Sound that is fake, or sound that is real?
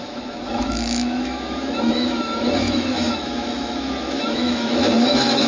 fake